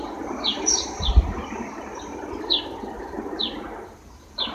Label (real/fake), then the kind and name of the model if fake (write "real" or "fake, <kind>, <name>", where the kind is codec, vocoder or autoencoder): fake, vocoder, BigVGAN v2